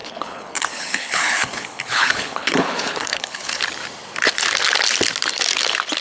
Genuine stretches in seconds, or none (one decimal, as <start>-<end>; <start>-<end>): 3.6-6.0